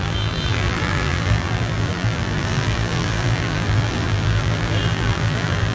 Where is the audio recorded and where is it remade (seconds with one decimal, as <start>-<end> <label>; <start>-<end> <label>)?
0.0-5.7 remade